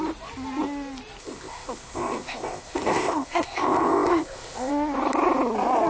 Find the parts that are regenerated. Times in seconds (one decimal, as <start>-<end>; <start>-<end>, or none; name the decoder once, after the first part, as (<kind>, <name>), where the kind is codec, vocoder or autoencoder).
1.2-4.7 (codec, ZipCodec)

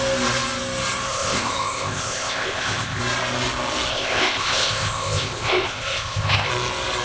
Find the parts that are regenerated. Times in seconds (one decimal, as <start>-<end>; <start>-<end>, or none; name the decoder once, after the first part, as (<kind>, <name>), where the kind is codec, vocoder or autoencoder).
1.1-3.0 (codec, ZipCodec); 3.9-6.5

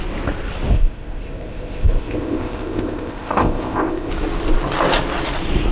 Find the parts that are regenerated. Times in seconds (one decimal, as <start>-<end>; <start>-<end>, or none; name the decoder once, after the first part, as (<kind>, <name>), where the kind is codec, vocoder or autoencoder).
0.7-4.1 (codec, ZipCodec)

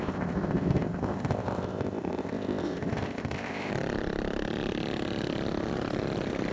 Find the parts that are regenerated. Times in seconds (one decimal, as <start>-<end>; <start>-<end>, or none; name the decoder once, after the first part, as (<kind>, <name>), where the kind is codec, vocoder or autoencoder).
0.0-3.7 (codec, ZipCodec)

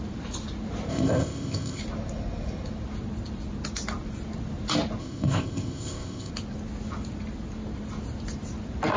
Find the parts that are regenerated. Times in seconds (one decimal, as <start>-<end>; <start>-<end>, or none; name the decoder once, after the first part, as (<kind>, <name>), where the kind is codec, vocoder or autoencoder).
0.9-1.8 (codec, ZipCodec); 5.0-6.3

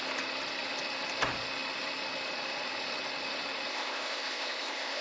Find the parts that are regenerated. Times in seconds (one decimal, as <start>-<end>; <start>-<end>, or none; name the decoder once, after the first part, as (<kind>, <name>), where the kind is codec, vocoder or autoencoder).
3.7-5.0 (codec, ZipCodec)